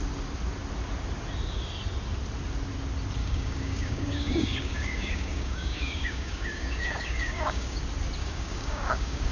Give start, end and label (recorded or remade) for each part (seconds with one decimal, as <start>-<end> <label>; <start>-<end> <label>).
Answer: 0.0-3.2 recorded; 3.2-7.8 remade; 7.8-8.2 recorded; 8.2-9.3 remade